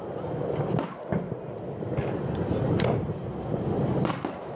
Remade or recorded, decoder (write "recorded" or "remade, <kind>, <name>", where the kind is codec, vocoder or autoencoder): recorded